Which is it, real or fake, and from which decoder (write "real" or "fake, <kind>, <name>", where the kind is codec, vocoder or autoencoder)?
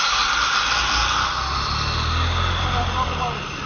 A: real